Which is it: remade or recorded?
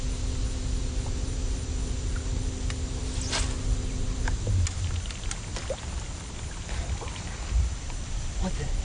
recorded